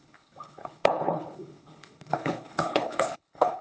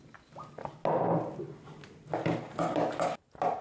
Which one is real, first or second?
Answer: second